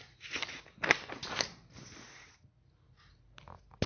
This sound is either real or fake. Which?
real